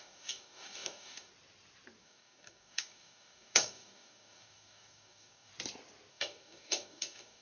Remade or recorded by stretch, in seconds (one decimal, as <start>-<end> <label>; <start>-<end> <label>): 0.0-1.3 remade; 1.3-2.0 recorded; 2.0-5.5 remade; 5.5-6.1 recorded; 6.1-7.4 remade

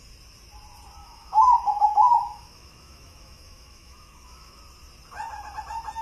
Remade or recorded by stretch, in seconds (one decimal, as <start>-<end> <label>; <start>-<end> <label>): 0.0-1.0 recorded; 1.0-4.6 remade; 4.6-6.0 recorded

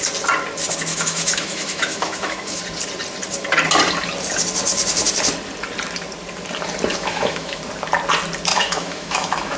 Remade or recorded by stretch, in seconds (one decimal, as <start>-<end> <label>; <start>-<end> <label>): 0.0-0.9 recorded; 0.9-2.6 remade; 2.6-6.9 recorded; 6.9-7.6 remade; 7.6-8.5 recorded; 8.5-9.6 remade